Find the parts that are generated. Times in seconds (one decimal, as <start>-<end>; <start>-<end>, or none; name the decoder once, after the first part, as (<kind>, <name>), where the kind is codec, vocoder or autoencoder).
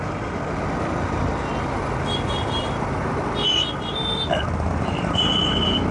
none